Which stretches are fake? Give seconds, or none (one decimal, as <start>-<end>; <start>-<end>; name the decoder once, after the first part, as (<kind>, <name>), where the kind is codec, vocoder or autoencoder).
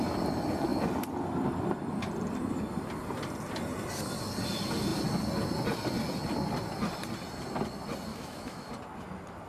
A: 8.1-8.7 (autoencoder, DAC-VAE)